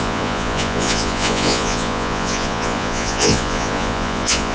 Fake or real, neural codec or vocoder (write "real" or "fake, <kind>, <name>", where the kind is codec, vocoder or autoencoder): fake, vocoder, Vocos